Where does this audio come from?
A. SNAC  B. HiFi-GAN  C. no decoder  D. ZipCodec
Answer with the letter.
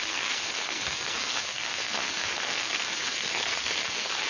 A